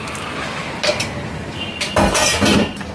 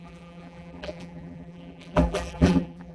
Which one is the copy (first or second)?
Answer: second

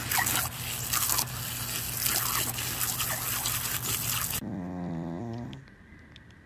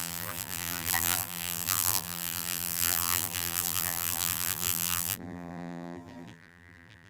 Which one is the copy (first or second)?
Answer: second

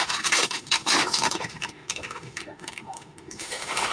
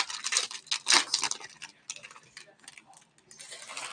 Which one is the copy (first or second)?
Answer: first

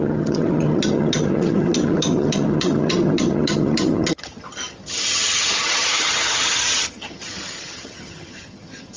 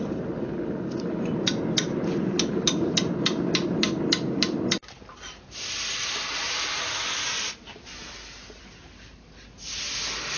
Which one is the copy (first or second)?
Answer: first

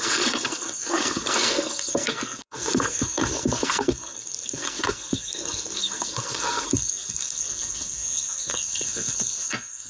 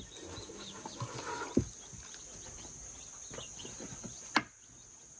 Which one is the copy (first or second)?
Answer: first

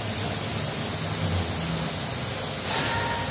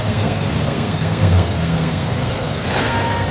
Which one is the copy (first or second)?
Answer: second